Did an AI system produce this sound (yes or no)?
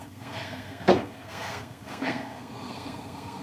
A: yes